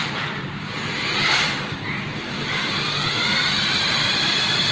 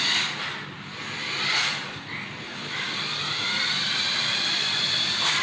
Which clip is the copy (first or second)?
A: first